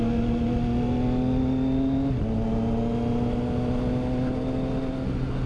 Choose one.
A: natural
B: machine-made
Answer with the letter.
A